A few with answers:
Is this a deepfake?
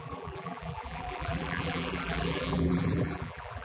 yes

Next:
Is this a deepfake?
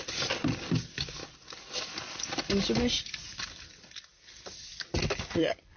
yes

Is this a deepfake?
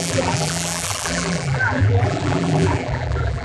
yes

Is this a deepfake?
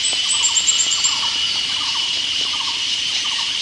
yes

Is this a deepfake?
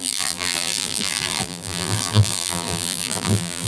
yes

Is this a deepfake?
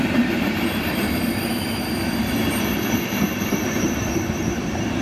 yes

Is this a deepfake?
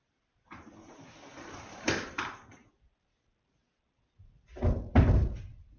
yes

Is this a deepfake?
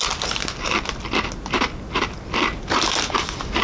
no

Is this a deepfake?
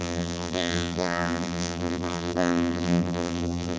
yes